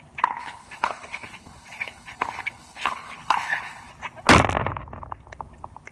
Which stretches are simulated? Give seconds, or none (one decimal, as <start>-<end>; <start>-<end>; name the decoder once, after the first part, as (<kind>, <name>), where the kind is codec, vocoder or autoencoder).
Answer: 0.4-3.9 (codec, HILCodec)